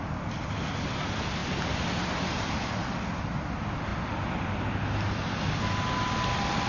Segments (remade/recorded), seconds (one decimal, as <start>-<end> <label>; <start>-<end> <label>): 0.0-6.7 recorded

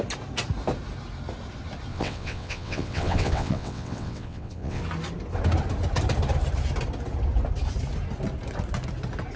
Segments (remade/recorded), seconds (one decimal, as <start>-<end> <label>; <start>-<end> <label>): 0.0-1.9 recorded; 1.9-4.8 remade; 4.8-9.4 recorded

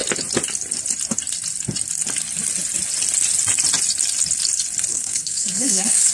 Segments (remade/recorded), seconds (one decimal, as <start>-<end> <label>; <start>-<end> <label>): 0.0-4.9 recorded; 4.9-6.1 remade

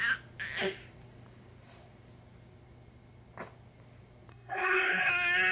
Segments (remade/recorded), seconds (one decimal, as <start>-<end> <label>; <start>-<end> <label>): 0.0-4.3 recorded; 4.3-5.1 remade; 5.1-5.5 recorded

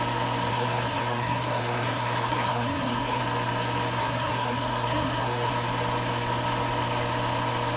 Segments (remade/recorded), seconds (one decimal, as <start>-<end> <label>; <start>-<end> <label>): 0.0-0.5 recorded; 0.5-3.2 remade; 3.2-4.0 recorded; 4.0-5.5 remade; 5.5-7.8 recorded

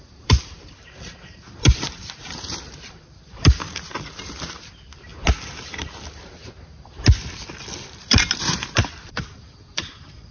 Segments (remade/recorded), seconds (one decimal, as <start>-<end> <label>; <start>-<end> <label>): 0.0-5.1 remade; 5.1-8.0 recorded; 8.0-10.3 remade

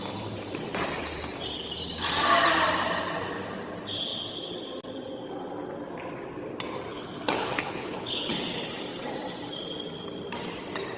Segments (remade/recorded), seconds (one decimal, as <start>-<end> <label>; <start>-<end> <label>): 0.0-6.9 recorded; 6.9-8.3 remade; 8.3-11.0 recorded

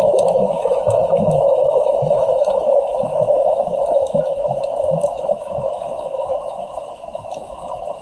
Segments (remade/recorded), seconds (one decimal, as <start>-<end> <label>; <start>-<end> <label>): 0.0-8.0 remade